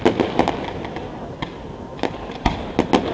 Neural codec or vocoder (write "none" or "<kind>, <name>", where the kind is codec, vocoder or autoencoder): none